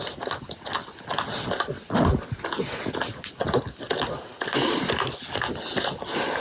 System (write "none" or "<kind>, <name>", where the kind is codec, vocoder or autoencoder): none